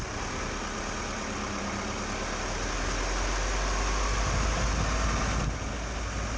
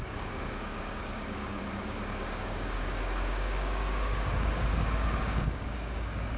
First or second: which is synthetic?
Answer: second